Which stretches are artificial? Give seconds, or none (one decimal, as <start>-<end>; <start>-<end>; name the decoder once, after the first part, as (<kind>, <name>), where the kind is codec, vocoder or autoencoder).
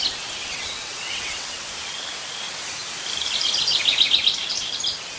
0.4-1.6 (vocoder, WaveNeXt)